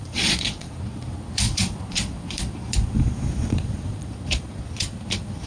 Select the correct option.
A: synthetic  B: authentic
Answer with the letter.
A